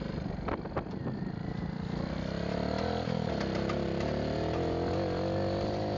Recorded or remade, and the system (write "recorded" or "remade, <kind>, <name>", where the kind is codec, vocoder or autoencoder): recorded